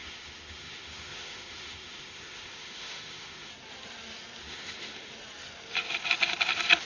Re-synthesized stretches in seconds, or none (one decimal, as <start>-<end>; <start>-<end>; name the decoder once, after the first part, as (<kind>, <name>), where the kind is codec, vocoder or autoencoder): 0.0-3.5 (autoencoder, DAC-VAE); 4.4-5.1